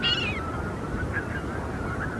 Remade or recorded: recorded